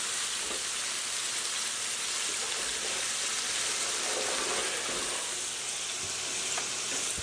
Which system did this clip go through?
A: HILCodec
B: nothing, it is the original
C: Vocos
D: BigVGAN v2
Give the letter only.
B